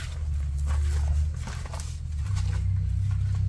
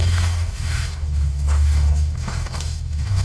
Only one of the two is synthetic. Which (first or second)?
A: second